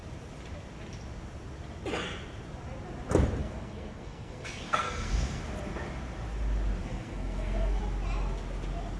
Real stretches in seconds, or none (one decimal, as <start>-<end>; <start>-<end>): 0.0-3.4; 5.4-6.8; 7.8-9.0